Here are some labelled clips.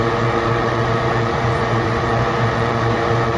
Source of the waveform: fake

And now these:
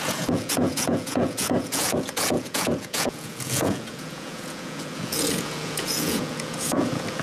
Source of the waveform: fake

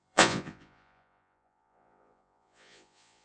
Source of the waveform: fake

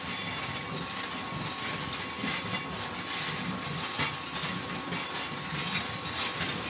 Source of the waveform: real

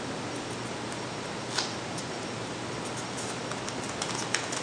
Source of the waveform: real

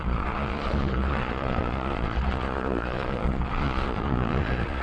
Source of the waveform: fake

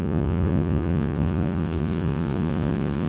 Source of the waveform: fake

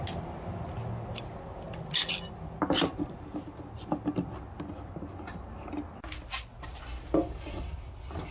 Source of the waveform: real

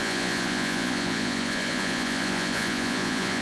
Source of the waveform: fake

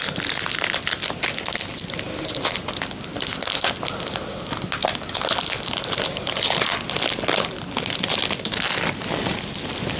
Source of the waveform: real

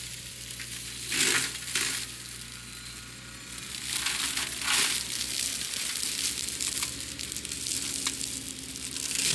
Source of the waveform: real